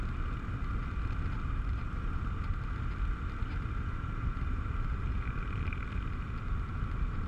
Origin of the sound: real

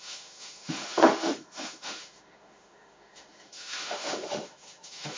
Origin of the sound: fake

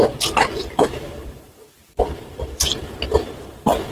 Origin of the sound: fake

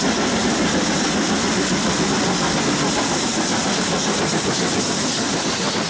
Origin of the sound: real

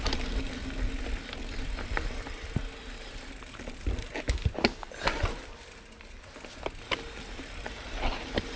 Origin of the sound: real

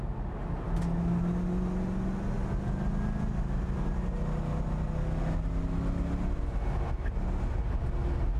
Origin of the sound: real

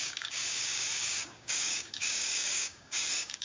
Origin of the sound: fake